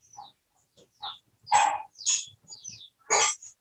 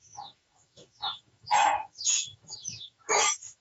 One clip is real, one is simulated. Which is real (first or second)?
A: first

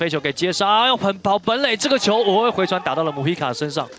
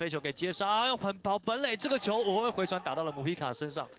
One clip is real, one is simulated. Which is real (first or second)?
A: first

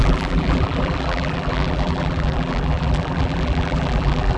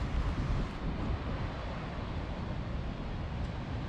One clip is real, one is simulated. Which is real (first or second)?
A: second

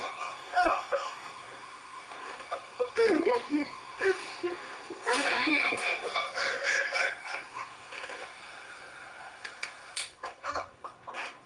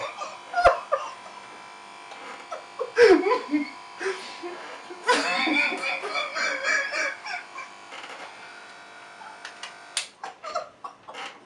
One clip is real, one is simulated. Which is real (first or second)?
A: second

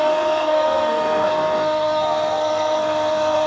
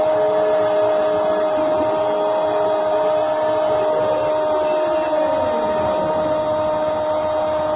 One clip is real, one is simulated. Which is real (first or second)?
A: second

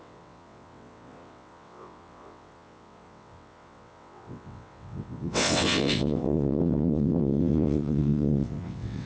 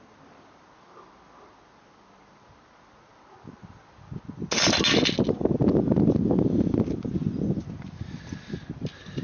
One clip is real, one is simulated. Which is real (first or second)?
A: second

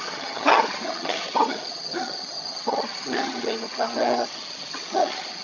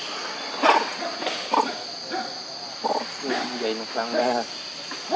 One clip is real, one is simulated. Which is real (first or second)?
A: second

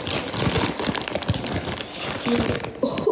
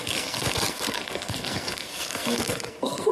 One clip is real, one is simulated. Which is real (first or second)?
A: first